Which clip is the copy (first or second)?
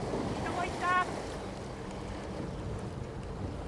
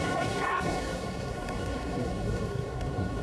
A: second